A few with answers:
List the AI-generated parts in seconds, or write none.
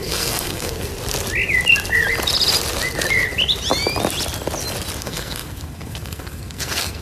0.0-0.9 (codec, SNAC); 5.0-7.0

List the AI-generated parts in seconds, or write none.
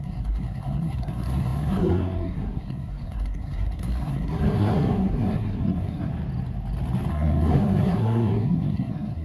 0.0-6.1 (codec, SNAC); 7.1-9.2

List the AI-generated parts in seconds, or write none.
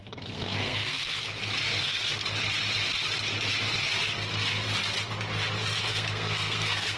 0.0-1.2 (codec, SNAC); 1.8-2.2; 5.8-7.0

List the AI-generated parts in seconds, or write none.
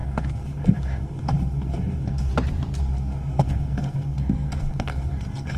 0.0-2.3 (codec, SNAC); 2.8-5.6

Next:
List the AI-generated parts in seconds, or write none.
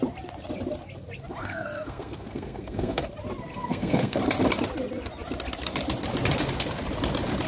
1.4-3.1 (codec, SNAC); 3.5-4.2